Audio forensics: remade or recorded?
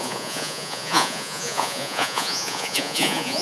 remade